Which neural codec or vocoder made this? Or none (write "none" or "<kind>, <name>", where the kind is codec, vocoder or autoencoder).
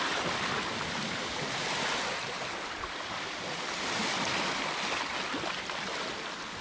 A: none